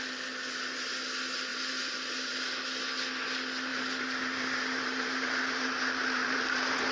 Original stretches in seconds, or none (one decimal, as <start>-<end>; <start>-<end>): 0.0-1.5; 2.3-3.7